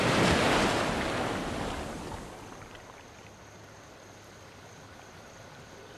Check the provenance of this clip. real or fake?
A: real